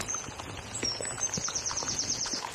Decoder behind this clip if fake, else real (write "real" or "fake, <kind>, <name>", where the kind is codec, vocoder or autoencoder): fake, vocoder, Vocos